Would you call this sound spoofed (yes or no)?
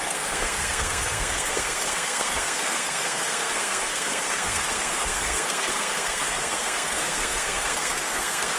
yes